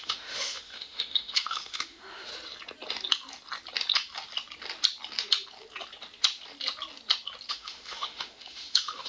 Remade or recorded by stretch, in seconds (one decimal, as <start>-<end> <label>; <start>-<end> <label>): 0.0-2.3 remade; 2.3-7.5 recorded; 7.5-9.1 remade